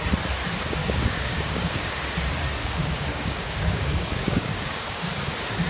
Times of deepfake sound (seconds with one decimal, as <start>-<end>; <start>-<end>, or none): 0.8-2.0; 2.6-5.0